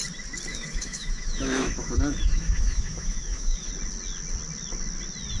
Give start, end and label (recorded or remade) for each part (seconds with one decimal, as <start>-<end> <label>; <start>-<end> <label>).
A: 0.0-0.5 recorded; 0.5-3.7 remade; 3.7-5.4 recorded